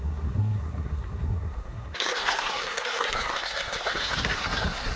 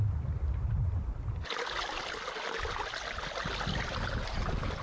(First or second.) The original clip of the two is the second